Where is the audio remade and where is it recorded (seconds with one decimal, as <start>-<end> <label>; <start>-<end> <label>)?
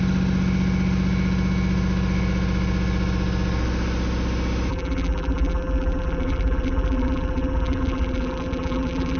0.0-4.7 recorded; 4.7-9.2 remade